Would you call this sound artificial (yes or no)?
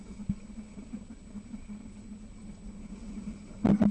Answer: no